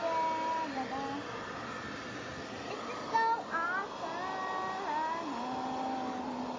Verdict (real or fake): real